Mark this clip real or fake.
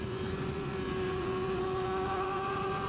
fake